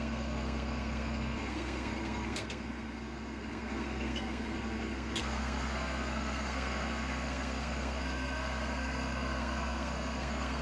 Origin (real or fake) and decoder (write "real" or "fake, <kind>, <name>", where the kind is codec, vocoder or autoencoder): fake, codec, SNAC